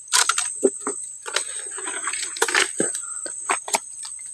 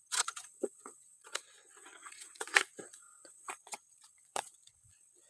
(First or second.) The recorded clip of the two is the first